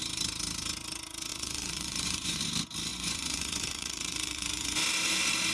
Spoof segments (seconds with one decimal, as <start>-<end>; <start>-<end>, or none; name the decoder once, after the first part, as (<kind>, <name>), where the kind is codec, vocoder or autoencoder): 1.3-2.4 (vocoder, Vocos); 2.9-4.8